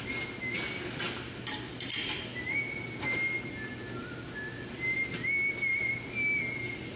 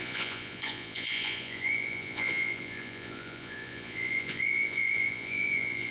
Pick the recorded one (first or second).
first